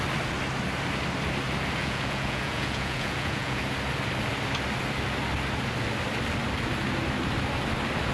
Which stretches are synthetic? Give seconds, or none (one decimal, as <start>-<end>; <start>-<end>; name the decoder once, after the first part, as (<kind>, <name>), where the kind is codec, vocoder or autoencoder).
1.8-3.6 (vocoder, Vocos)